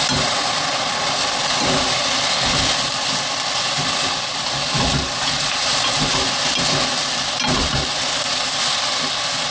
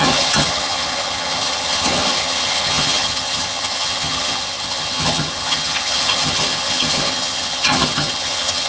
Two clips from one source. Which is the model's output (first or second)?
second